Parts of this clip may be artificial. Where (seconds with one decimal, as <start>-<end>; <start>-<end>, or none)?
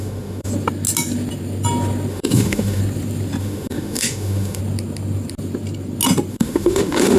0.0-0.5; 2.1-2.8; 3.4-4.6; 6.3-7.2